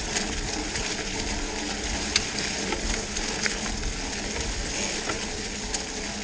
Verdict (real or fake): real